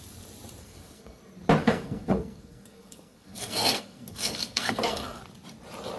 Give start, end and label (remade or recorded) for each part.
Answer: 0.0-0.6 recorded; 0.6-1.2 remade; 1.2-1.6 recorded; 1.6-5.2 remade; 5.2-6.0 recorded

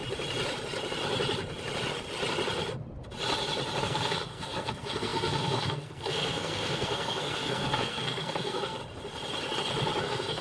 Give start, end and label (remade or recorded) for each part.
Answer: 0.0-3.8 recorded; 3.8-8.8 remade; 8.8-10.0 recorded; 10.0-10.4 remade